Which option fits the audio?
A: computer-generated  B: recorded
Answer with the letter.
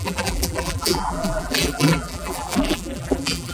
A